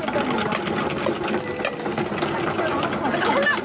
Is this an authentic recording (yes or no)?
yes